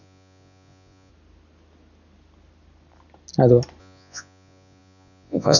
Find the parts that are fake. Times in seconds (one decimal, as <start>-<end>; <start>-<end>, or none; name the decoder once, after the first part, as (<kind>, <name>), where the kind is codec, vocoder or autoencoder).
0.0-1.1 (vocoder, Vocos); 3.8-5.6